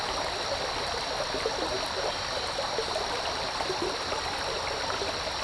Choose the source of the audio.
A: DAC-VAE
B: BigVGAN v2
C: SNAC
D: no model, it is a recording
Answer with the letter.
D